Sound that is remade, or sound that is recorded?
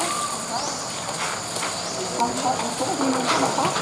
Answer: recorded